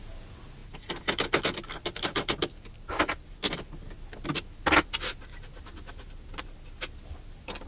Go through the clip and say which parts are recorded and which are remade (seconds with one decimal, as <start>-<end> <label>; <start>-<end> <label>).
0.0-7.7 recorded